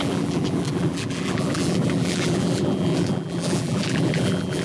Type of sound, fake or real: fake